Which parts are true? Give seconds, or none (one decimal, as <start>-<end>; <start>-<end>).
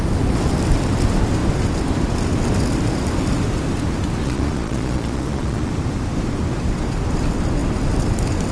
0.0-4.2; 5.7-8.5